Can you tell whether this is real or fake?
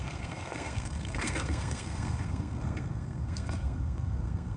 fake